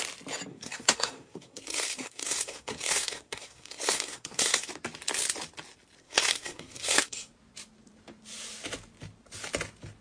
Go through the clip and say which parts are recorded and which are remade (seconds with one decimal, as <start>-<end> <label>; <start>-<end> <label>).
0.0-0.5 recorded; 0.5-4.7 remade; 4.7-6.0 recorded; 6.0-7.3 remade; 7.3-10.0 recorded